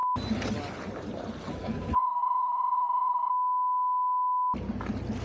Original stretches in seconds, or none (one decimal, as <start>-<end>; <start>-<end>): 0.0-1.5; 3.3-5.2